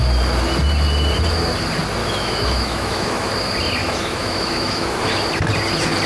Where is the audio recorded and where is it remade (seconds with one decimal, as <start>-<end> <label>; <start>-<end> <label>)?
0.0-2.0 recorded; 2.0-3.3 remade; 3.3-3.8 recorded; 3.8-5.0 remade; 5.0-6.1 recorded